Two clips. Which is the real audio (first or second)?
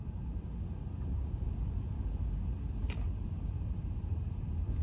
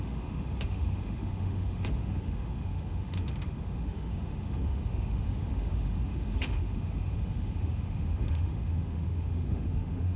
first